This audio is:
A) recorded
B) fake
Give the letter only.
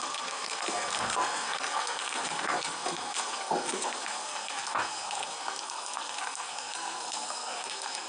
B